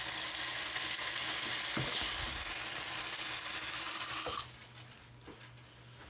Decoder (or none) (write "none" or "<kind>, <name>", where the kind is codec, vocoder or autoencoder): none